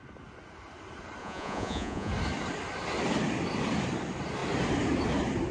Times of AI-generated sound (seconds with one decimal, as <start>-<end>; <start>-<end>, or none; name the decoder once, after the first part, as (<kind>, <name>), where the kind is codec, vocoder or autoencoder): 1.2-2.1 (vocoder, Vocos)